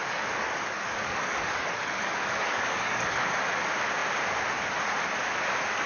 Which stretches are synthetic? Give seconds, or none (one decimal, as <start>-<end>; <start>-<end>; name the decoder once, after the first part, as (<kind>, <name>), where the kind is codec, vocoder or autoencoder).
0.0-3.5 (codec, DAC)